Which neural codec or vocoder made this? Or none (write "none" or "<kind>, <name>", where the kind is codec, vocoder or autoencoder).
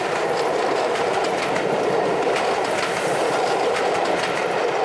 none